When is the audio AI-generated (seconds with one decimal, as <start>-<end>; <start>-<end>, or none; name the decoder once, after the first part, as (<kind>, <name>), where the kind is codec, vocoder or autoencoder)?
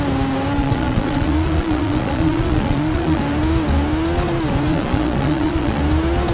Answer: 0.6-3.2 (vocoder, Vocos); 4.7-5.8